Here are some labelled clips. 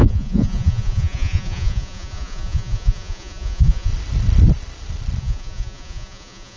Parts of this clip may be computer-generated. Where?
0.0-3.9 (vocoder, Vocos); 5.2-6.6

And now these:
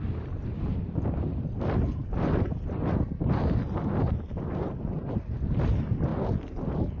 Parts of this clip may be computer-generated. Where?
none

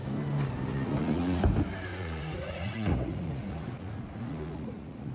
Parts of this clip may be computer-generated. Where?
0.7-1.4 (vocoder, Vocos); 1.9-5.1